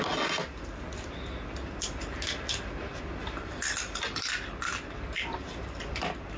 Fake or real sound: real